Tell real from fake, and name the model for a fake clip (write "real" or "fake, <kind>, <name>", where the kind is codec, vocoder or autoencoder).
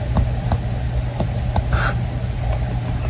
real